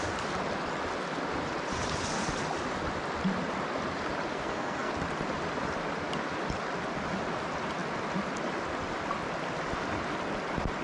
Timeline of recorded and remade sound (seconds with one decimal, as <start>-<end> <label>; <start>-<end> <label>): 0.0-4.3 recorded; 4.3-4.9 remade; 4.9-10.8 recorded